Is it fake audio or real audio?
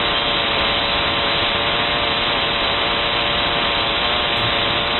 real